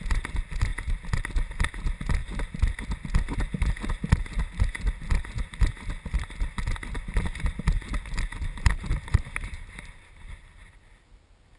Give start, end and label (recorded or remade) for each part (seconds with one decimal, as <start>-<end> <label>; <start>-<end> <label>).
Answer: 0.0-8.9 recorded; 8.9-10.3 remade; 10.3-11.6 recorded